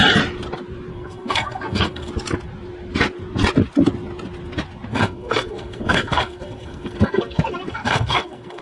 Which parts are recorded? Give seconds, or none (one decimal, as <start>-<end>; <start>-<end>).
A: 0.0-0.9; 2.1-4.9